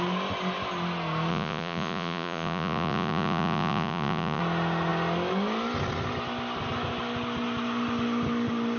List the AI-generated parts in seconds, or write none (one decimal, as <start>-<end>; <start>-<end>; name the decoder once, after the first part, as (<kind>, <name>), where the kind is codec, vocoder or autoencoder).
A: 1.3-4.4 (vocoder, Vocos)